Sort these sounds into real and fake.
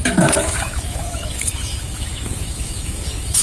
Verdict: fake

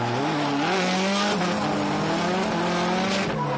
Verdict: real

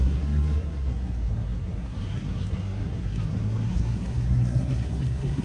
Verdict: fake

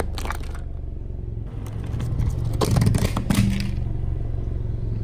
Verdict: real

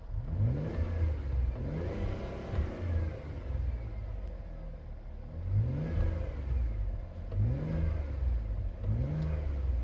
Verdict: real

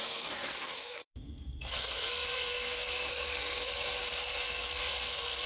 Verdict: fake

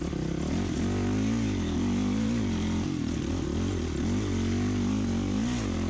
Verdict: real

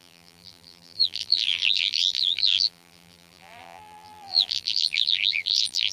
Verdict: fake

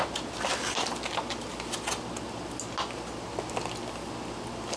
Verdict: real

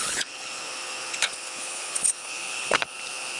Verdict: fake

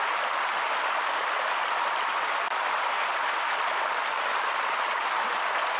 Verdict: real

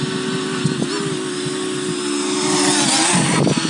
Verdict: real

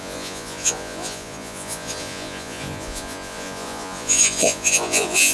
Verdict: fake